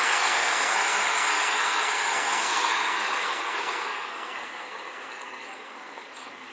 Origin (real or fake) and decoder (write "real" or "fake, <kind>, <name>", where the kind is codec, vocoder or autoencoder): fake, codec, SNAC